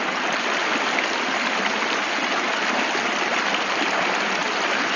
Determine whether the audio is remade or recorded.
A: recorded